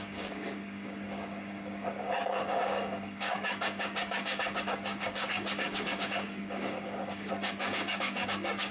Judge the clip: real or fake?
fake